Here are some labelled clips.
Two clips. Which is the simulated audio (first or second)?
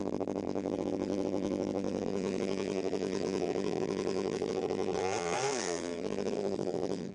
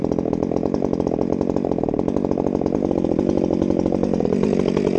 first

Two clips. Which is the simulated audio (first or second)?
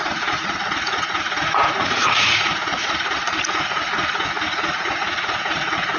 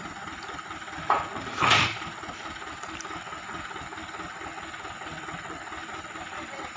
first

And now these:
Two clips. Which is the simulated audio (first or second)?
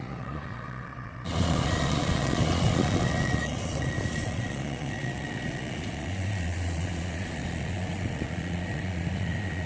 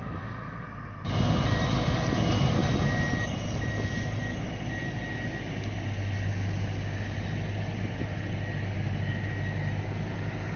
first